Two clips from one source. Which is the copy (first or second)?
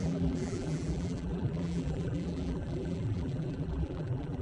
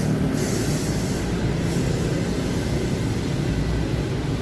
first